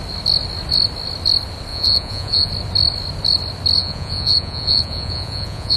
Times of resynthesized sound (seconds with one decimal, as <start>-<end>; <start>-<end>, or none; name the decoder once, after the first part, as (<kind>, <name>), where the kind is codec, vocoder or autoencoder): 1.7-2.5 (vocoder, Vocos); 3.8-5.8